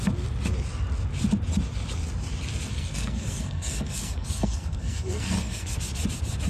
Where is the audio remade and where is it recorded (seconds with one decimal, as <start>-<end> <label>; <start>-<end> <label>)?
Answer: 0.0-2.7 recorded; 2.7-5.8 remade; 5.8-6.5 recorded